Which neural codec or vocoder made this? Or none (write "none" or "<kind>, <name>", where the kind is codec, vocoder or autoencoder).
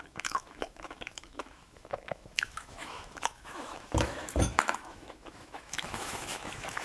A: autoencoder, DAC-VAE